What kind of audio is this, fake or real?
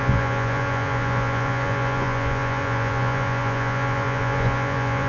fake